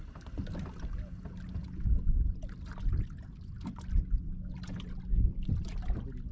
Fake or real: real